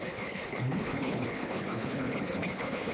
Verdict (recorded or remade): remade